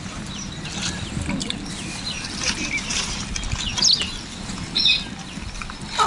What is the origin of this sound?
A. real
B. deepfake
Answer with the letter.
A